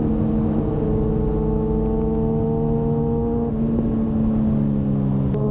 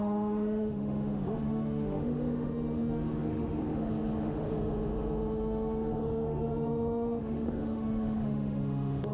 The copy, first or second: second